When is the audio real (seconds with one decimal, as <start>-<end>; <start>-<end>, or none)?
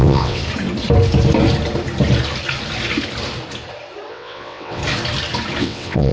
0.4-4.1; 4.8-5.6